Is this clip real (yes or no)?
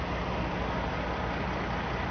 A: yes